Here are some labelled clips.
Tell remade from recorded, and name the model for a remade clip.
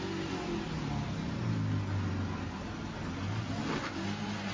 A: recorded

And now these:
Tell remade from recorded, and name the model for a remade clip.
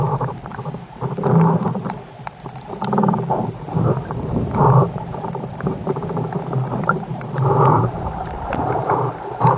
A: remade, vocoder, BigVGAN v2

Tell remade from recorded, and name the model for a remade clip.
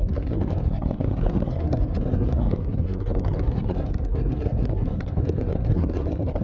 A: remade, codec, SNAC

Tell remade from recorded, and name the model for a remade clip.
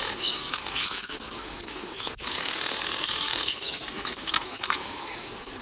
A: remade, codec, SNAC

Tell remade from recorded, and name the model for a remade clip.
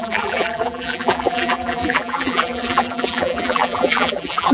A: remade, vocoder, BigVGAN v2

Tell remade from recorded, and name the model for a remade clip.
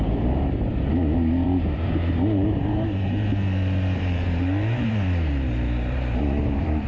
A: remade, vocoder, BigVGAN v2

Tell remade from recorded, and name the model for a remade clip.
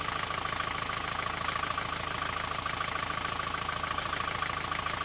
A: recorded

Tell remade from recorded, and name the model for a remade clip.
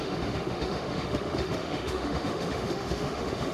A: remade, autoencoder, DAC-VAE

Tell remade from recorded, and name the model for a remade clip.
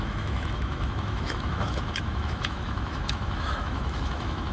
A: remade, autoencoder, DAC-VAE